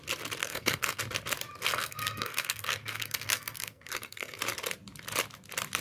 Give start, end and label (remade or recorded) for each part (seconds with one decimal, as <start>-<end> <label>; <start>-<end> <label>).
0.0-0.4 recorded; 0.4-1.0 remade; 1.0-1.7 recorded; 1.7-4.4 remade; 4.4-5.8 recorded